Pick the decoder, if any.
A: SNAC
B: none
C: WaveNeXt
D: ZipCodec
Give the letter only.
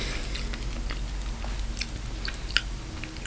B